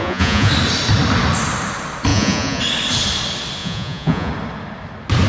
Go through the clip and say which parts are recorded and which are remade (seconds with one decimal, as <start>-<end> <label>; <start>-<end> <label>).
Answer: 0.0-0.5 remade; 0.5-2.1 recorded; 2.1-2.6 remade; 2.6-3.6 recorded; 3.6-4.3 remade; 4.3-5.3 recorded